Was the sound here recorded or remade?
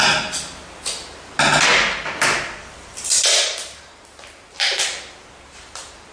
recorded